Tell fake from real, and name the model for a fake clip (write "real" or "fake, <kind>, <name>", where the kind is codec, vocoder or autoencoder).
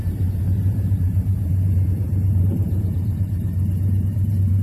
fake, vocoder, BigVGAN v2